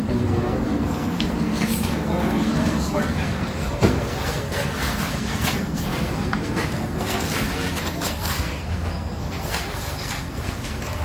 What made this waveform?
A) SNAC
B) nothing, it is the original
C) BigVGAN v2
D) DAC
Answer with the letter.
A